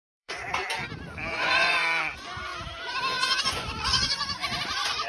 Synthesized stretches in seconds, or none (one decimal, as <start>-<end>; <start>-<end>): 0.0-0.6; 1.3-2.5; 3.4-5.1